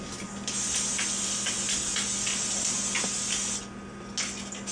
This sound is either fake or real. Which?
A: real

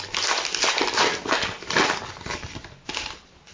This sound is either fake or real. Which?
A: real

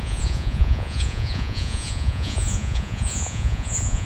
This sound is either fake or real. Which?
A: fake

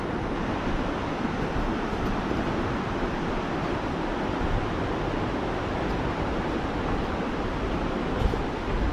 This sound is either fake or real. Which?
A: real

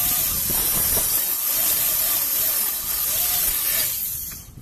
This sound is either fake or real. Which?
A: real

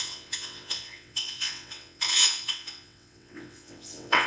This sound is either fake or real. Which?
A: fake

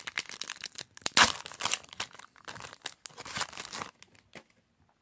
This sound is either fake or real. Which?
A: real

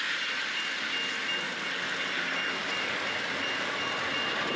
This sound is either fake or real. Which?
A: real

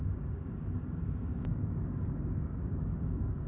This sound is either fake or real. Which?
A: fake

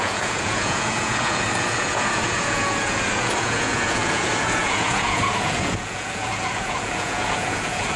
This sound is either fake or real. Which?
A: fake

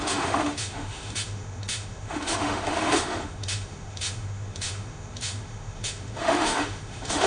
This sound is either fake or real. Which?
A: fake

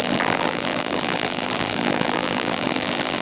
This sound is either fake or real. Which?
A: fake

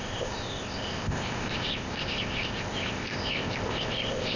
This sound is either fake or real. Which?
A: fake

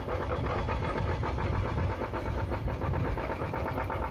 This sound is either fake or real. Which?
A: real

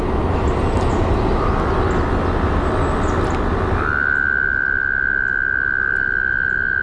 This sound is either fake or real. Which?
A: real